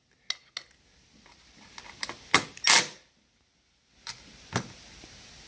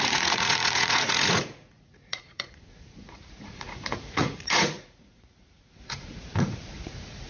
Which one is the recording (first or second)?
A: first